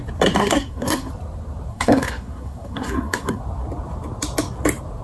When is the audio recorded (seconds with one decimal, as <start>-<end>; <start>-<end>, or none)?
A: 0.0-0.4; 1.1-1.7; 3.4-5.0

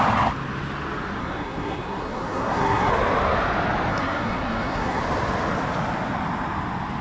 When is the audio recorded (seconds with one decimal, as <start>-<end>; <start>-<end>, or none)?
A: 0.0-1.2; 2.9-3.9; 5.0-7.0

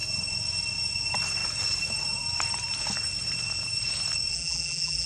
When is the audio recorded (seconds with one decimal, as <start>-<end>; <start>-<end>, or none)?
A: 0.0-4.3

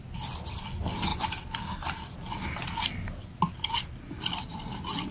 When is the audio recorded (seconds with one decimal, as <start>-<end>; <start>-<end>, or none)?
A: 0.0-5.1

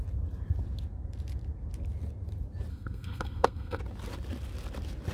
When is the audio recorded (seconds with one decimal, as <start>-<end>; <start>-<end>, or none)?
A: 0.0-2.7; 3.8-5.1

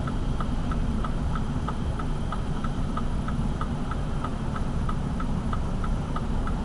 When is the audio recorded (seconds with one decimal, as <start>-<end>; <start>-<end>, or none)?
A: none